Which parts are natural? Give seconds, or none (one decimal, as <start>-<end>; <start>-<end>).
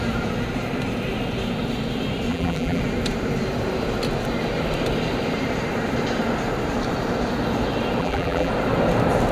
0.0-2.3; 2.8-8.0; 8.5-9.3